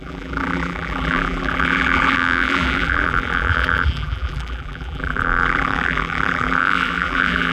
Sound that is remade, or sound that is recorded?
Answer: remade